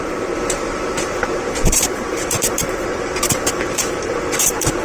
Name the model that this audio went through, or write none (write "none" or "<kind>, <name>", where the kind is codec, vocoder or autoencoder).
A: vocoder, BigVGAN v2